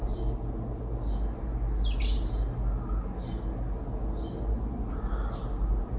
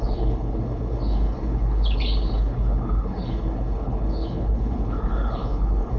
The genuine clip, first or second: first